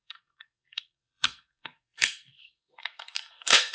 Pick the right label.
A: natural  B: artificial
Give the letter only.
B